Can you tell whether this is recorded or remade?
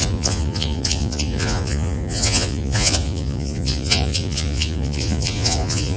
remade